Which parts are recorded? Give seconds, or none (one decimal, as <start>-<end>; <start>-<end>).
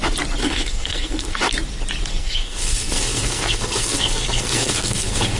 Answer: 0.0-0.4; 1.4-2.1